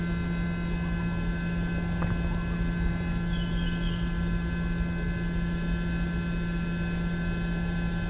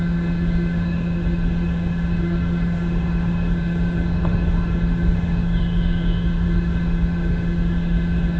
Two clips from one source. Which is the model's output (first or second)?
second